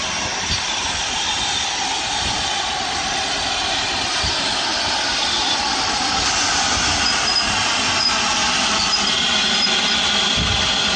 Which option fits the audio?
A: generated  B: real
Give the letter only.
B